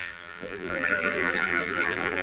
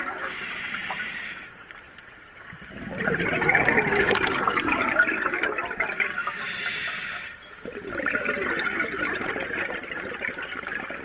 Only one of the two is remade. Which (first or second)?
first